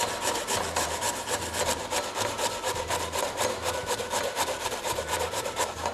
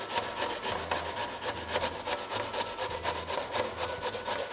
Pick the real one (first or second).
second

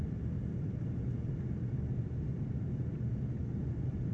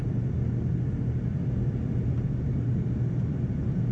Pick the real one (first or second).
second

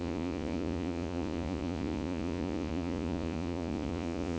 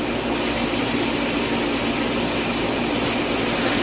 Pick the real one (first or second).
second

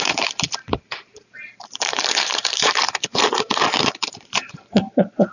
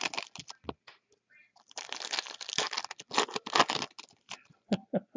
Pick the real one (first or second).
second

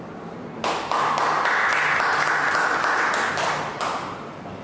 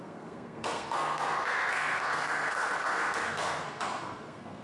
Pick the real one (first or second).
first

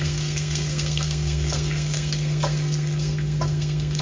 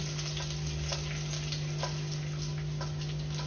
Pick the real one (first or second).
second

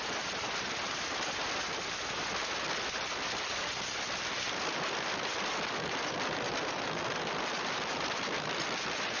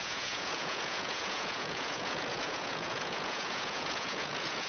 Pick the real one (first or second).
first